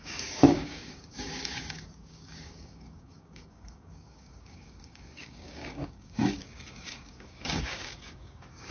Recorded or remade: remade